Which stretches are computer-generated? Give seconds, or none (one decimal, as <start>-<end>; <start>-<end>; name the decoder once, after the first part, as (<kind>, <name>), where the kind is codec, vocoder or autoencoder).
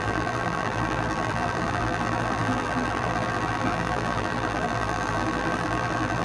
0.0-6.2 (vocoder, BigVGAN v2)